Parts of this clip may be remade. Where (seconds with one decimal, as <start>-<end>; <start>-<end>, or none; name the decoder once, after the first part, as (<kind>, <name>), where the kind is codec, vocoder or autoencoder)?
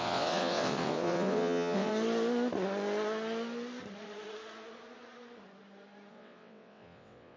0.0-1.9 (vocoder, WaveNeXt); 6.1-7.4